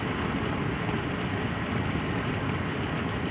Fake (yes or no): no